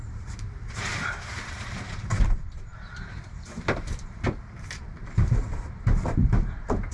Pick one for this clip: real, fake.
fake